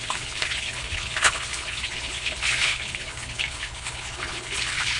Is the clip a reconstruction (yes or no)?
yes